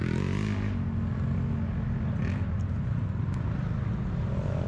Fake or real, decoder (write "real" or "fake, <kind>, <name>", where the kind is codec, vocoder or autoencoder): real